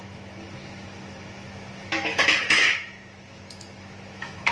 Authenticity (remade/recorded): remade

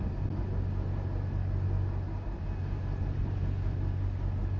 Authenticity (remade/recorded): recorded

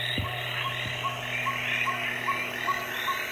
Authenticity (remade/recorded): recorded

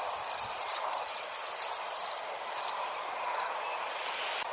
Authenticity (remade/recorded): recorded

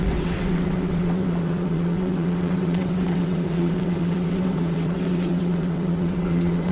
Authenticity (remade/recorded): remade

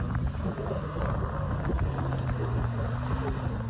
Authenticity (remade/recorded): recorded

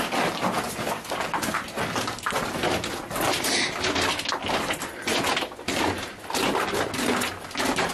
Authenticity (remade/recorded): recorded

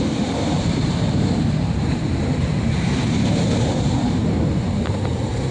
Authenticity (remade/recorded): remade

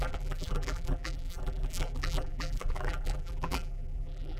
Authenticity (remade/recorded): remade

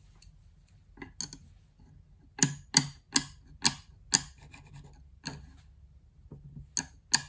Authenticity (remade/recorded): recorded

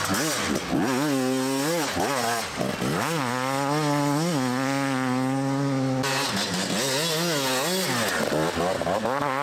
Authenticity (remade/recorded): recorded